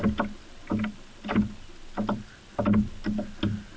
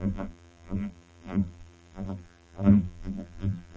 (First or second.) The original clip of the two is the first